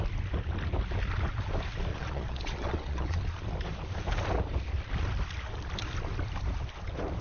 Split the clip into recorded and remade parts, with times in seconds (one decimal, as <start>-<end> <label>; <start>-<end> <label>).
0.0-1.9 recorded; 1.9-3.2 remade; 3.2-7.2 recorded